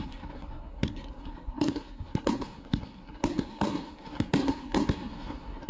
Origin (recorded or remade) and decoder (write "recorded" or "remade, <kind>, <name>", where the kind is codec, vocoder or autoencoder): remade, codec, SNAC